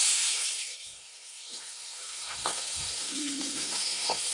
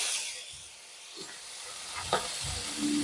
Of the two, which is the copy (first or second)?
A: first